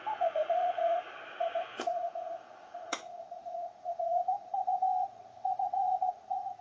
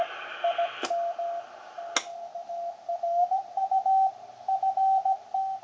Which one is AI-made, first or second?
first